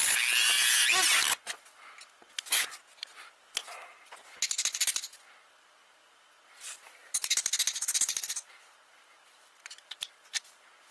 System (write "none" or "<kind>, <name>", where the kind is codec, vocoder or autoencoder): none